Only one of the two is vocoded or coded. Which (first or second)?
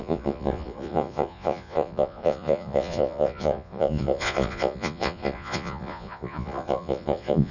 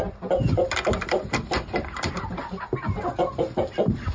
first